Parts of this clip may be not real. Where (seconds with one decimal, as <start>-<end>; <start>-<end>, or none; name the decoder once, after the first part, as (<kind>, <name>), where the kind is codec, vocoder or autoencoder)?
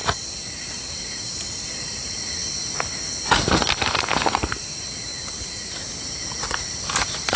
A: 0.0-2.4 (vocoder, BigVGAN v2); 4.5-5.1; 6.4-7.4